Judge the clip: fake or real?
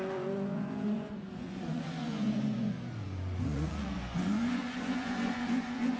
fake